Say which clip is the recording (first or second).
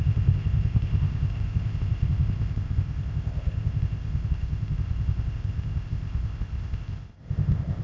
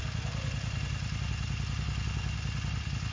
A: second